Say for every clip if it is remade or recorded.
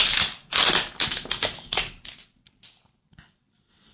recorded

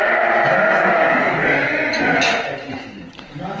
recorded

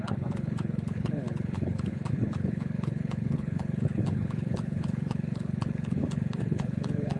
remade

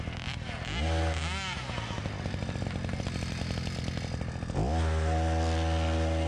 recorded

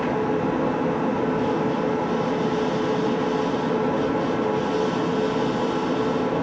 recorded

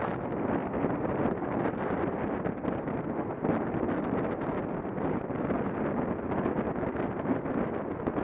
recorded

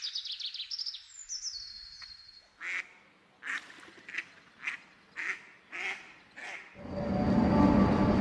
recorded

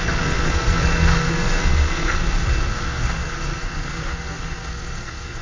remade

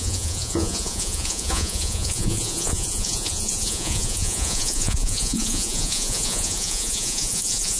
remade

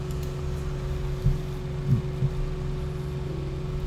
recorded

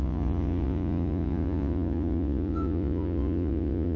remade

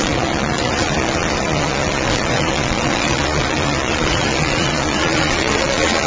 remade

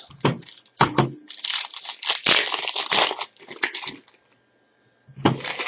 recorded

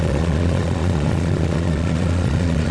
remade